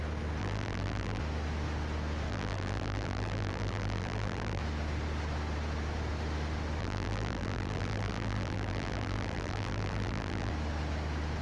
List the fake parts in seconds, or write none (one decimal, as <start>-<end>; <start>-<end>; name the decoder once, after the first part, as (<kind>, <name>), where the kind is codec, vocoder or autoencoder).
0.4-1.2 (vocoder, BigVGAN v2); 2.3-4.6; 6.8-10.5